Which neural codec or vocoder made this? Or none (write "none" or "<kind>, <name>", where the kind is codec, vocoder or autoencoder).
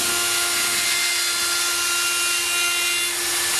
none